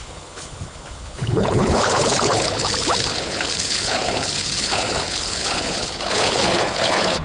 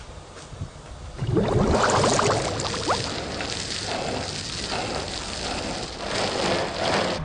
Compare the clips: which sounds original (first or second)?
second